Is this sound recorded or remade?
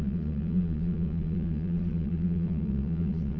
remade